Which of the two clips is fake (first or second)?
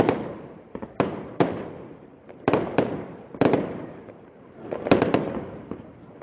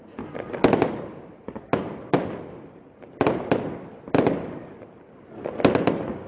first